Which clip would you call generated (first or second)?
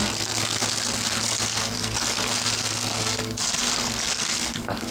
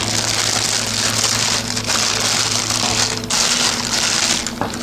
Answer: first